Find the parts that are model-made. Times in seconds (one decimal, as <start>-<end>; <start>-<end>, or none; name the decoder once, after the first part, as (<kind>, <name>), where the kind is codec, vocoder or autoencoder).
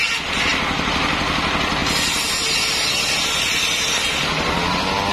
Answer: none